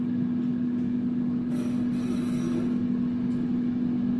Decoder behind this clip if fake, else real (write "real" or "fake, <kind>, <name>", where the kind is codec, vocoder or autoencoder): real